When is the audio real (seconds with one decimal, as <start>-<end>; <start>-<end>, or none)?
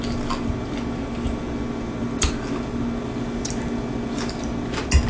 0.0-5.1